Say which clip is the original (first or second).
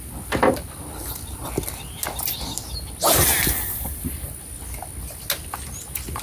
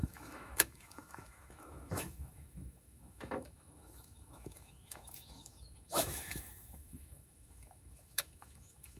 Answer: first